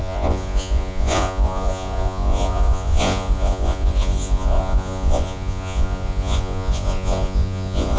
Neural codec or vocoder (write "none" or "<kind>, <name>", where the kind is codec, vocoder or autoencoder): vocoder, Vocos